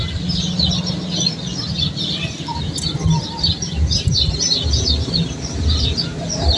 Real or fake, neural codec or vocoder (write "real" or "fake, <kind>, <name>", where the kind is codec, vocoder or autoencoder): real